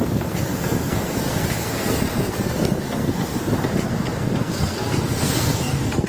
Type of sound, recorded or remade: remade